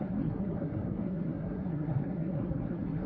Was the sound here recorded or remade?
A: remade